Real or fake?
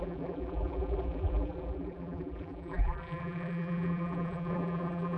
fake